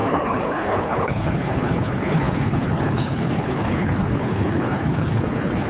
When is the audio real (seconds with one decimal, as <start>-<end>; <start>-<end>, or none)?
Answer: none